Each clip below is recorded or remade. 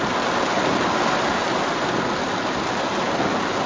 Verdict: recorded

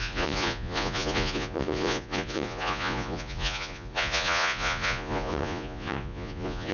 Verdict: remade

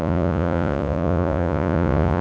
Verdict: remade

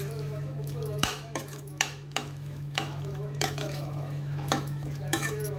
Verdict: remade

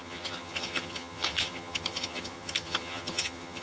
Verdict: remade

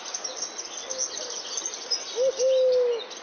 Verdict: recorded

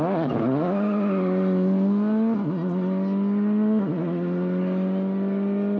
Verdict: recorded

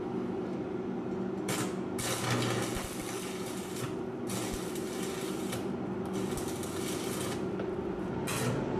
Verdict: recorded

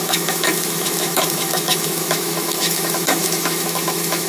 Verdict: remade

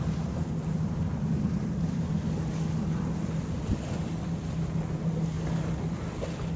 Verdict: recorded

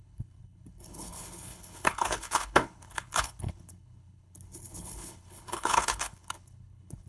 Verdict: remade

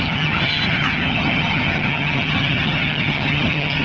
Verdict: remade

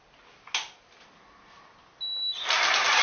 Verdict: recorded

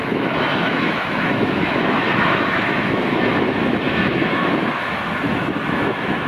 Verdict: remade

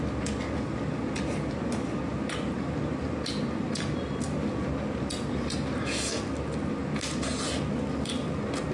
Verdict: recorded